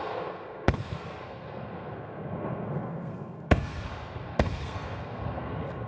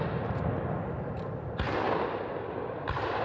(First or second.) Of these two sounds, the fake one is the first